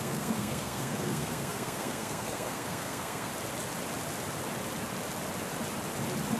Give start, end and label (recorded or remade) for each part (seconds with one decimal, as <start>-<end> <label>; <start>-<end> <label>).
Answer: 0.0-3.3 remade; 3.3-6.4 recorded